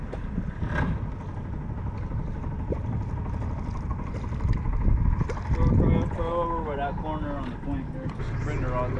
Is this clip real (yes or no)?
yes